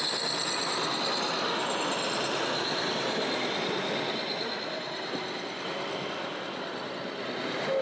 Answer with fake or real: real